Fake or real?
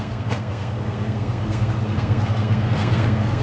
fake